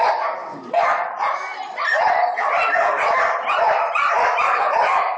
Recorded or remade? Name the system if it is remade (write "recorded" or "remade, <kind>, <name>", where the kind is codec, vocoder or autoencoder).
recorded